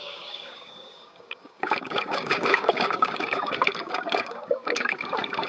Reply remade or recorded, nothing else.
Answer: remade